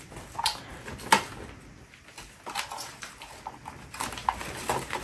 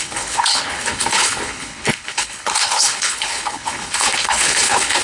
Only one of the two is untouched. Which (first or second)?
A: first